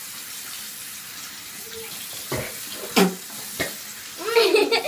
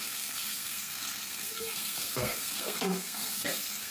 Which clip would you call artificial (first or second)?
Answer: second